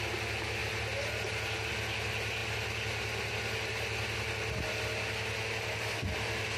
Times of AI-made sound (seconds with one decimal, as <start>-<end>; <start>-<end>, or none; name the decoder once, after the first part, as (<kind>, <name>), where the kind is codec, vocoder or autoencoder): none